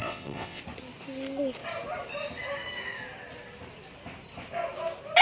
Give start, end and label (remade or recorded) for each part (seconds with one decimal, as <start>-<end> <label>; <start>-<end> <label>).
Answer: 0.0-0.6 remade; 0.6-5.2 recorded